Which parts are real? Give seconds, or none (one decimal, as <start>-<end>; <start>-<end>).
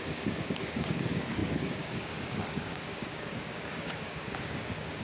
none